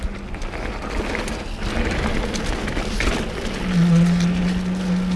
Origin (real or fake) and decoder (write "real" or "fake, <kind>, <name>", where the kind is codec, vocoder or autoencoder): real